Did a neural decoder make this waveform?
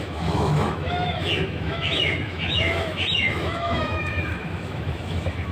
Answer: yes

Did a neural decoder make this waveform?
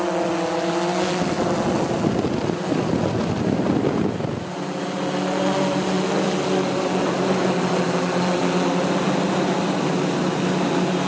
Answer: no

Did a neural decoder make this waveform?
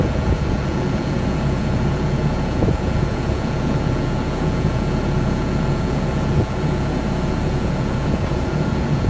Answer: yes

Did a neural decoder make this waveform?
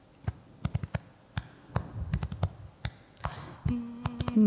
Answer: no